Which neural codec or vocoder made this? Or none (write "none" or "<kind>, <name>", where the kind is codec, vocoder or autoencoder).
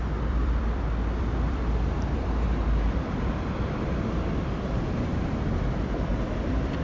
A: vocoder, BigVGAN v2